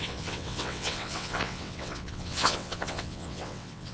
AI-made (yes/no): yes